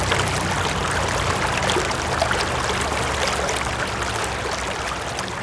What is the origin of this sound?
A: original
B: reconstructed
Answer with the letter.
A